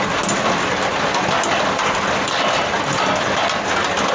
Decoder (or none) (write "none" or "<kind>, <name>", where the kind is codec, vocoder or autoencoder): none